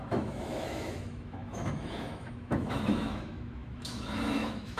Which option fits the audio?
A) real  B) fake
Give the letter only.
B